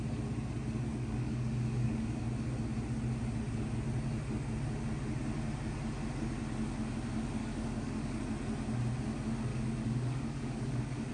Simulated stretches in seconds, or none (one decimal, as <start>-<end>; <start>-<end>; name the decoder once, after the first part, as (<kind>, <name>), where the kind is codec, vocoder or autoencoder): 0.9-2.2 (codec, DAC); 7.4-8.2; 9.5-11.1